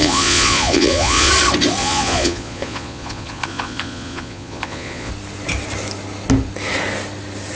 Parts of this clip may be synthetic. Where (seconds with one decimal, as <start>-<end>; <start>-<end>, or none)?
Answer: 0.0-1.3; 1.8-5.1